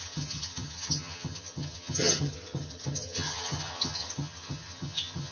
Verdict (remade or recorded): remade